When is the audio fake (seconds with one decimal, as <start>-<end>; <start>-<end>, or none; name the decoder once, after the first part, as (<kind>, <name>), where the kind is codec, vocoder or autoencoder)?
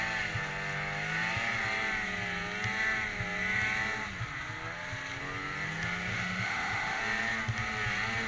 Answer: 6.1-7.0 (autoencoder, DAC-VAE)